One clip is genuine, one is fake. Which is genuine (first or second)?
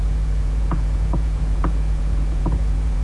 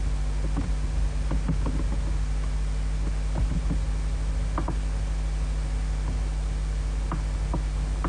second